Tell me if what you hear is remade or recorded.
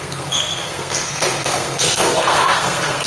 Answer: remade